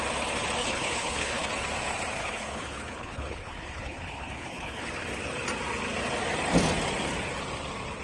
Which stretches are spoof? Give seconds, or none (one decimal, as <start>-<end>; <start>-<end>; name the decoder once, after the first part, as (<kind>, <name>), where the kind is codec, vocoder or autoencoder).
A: 0.6-1.5 (codec, HILCodec); 2.2-4.9